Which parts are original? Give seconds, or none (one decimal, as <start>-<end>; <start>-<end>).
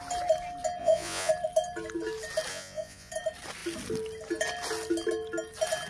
0.0-0.8; 1.3-2.5; 3.1-5.9